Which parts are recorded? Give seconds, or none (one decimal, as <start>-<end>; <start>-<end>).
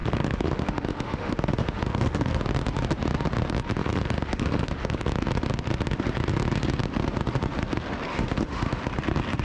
2.4-3.8; 5.1-8.1; 8.8-9.4